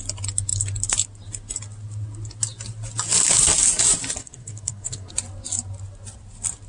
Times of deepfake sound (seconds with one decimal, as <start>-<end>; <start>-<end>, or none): 4.2-5.1

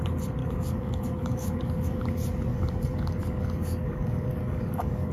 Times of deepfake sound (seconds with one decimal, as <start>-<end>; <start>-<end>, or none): 0.4-2.0; 2.5-5.1

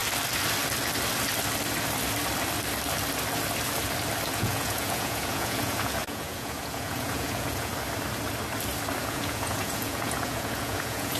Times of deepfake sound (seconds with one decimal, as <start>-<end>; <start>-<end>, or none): 4.3-7.7; 9.0-11.2

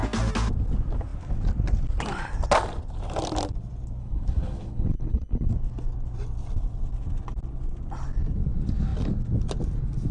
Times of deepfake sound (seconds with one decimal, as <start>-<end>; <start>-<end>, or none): 4.0-5.5

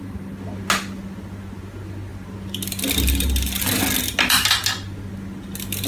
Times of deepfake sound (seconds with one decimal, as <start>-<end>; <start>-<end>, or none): none

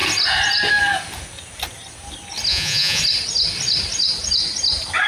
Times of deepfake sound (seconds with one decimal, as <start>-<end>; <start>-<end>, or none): 2.5-3.0

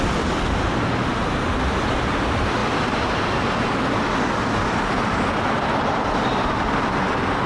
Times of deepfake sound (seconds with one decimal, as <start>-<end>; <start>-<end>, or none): none

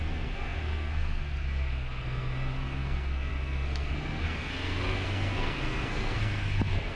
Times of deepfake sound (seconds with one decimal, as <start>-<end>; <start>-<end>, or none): 0.0-7.0